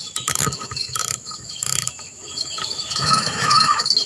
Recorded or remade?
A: remade